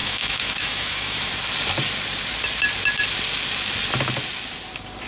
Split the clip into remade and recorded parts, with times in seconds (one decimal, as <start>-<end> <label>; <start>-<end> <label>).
0.0-1.3 remade; 1.3-5.1 recorded